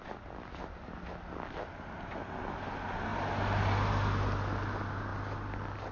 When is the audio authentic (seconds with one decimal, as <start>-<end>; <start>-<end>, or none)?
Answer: 0.0-5.9